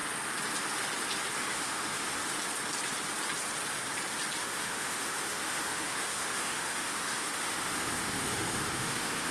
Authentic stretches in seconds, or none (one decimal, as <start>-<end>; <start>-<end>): 0.0-1.4; 2.2-4.4